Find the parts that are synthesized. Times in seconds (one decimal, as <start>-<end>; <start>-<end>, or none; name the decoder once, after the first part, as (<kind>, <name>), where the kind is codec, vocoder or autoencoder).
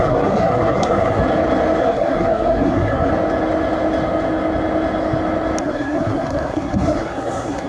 0.0-1.2 (codec, SNAC); 1.8-3.1; 5.6-7.7